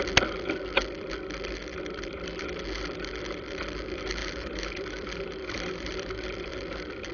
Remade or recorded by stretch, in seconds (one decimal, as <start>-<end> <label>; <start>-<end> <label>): 0.0-1.7 recorded; 1.7-2.5 remade; 2.5-4.2 recorded; 4.2-6.5 remade; 6.5-7.1 recorded